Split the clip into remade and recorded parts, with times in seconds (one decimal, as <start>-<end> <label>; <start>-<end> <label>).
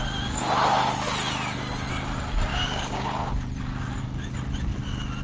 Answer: 0.0-2.5 recorded; 2.5-3.3 remade; 3.3-5.2 recorded